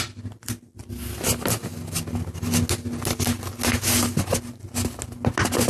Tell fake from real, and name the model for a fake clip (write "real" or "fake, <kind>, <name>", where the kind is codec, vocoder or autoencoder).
real